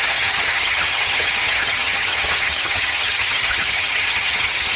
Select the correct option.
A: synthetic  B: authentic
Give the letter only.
A